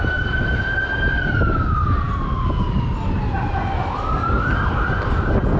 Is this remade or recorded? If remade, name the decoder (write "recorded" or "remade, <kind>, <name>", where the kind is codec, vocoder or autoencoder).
recorded